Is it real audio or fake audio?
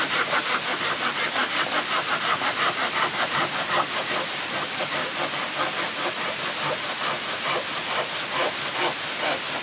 real